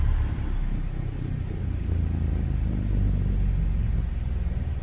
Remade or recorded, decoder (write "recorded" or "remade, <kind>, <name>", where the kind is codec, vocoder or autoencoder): recorded